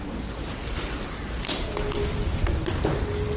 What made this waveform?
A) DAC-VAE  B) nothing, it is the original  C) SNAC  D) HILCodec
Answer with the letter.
B